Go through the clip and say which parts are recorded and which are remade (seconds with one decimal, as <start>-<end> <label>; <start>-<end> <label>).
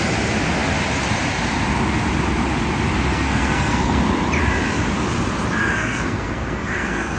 0.0-3.1 recorded; 3.1-4.0 remade; 4.0-5.6 recorded; 5.6-7.2 remade